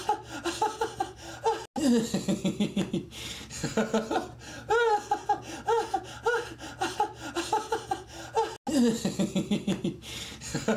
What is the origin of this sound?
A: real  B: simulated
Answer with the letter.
A